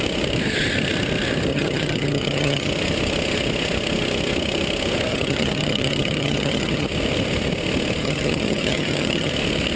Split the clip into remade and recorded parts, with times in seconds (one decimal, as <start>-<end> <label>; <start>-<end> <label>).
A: 0.0-1.5 recorded; 1.5-2.7 remade; 2.7-5.1 recorded; 5.1-6.9 remade; 6.9-8.0 recorded; 8.0-9.3 remade; 9.3-9.8 recorded